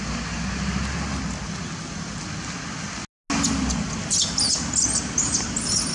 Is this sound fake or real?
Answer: real